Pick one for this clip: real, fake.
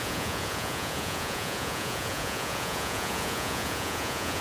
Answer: fake